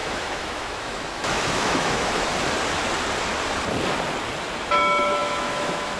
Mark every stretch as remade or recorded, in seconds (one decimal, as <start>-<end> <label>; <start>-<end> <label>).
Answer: 0.0-2.3 remade; 2.3-4.6 recorded; 4.6-6.0 remade